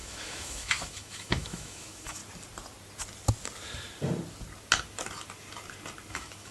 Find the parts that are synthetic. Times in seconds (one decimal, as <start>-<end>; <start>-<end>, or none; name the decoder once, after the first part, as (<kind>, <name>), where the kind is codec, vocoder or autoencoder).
0.0-2.2 (autoencoder, DAC-VAE); 6.1-6.5